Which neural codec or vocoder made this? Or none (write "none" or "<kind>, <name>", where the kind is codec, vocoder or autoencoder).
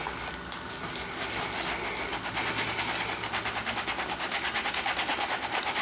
none